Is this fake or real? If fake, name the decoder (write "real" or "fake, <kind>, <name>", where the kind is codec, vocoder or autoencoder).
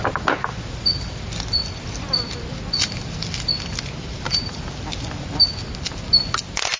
real